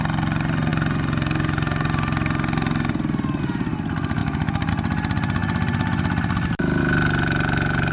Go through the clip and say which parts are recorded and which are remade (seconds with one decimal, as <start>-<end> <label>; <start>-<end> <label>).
0.0-4.2 recorded; 4.2-4.7 remade; 4.7-7.9 recorded